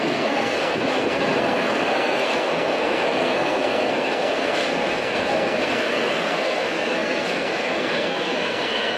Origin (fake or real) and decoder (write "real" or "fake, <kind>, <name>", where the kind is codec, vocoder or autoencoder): fake, codec, SNAC